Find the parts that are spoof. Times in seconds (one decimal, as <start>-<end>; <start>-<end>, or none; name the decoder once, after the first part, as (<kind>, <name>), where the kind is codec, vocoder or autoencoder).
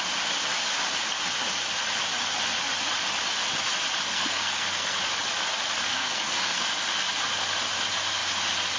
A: 4.1-5.0 (codec, SNAC); 5.9-6.6